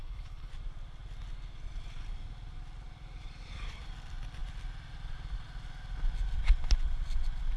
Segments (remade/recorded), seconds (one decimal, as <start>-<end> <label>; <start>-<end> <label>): 0.0-0.5 remade; 0.5-7.6 recorded